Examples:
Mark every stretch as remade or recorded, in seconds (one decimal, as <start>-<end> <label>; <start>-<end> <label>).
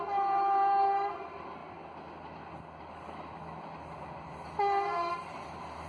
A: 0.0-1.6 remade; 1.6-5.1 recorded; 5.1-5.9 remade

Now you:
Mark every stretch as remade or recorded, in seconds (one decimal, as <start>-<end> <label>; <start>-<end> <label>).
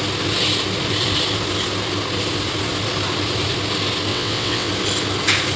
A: 0.0-4.1 recorded; 4.1-4.7 remade; 4.7-5.6 recorded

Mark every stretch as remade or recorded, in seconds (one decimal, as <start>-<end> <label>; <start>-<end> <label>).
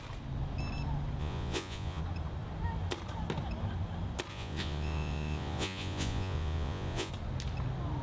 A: 0.0-1.2 recorded; 1.2-2.0 remade; 2.0-4.3 recorded; 4.3-7.1 remade; 7.1-8.0 recorded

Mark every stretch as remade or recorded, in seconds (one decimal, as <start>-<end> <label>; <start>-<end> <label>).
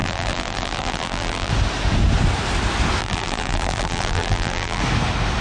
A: 0.0-1.5 remade; 1.5-3.0 recorded; 3.0-4.8 remade; 4.8-5.4 recorded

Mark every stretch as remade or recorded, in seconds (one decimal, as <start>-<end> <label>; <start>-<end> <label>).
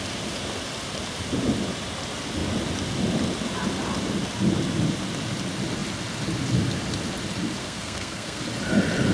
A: 0.0-7.6 recorded; 7.6-8.4 remade; 8.4-9.1 recorded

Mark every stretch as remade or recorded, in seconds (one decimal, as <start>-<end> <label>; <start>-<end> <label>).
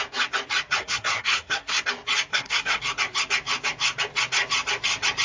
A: 0.0-0.8 recorded; 0.8-1.8 remade; 1.8-2.3 recorded; 2.3-2.8 remade; 2.8-5.2 recorded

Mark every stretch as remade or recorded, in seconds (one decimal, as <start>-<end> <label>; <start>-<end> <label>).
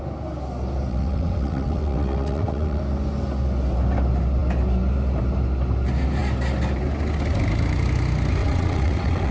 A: 0.0-0.9 recorded; 0.9-2.8 remade; 2.8-8.4 recorded; 8.4-9.3 remade